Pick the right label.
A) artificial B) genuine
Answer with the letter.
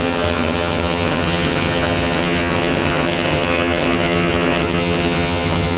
A